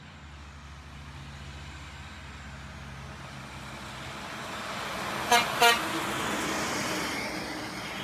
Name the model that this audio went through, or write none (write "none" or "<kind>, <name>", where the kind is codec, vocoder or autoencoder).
none